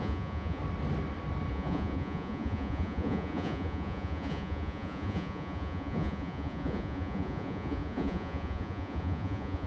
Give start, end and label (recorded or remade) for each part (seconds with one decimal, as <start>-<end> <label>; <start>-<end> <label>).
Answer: 0.0-0.6 remade; 0.6-1.5 recorded; 1.5-9.7 remade